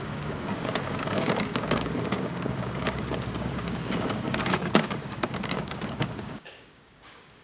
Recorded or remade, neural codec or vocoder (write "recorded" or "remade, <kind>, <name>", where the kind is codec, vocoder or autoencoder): remade, codec, DAC